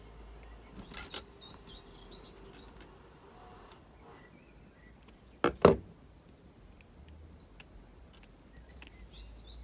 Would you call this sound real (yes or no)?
yes